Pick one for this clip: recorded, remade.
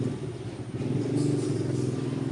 recorded